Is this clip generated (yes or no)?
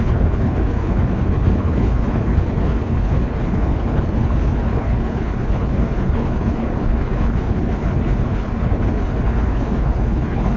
yes